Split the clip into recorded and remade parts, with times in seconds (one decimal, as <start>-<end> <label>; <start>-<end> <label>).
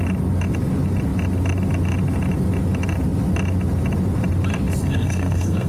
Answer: 0.0-4.8 recorded; 4.8-5.7 remade